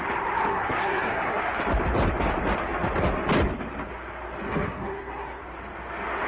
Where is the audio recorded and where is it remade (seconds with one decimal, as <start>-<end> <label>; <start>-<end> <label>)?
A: 0.0-0.5 recorded; 0.5-1.4 remade; 1.4-4.5 recorded; 4.5-5.4 remade; 5.4-6.3 recorded